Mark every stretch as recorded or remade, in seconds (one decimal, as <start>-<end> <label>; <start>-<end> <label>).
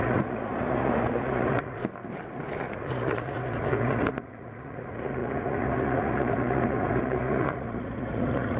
0.0-1.8 remade; 1.8-2.6 recorded; 2.6-8.6 remade